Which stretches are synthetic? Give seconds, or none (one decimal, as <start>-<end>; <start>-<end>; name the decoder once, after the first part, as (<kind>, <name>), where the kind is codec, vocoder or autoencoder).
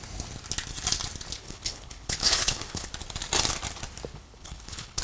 1.4-2.9 (codec, HILCodec); 4.1-5.0